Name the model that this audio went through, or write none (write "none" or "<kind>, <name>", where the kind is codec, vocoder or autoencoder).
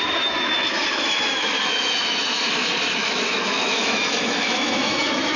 autoencoder, DAC-VAE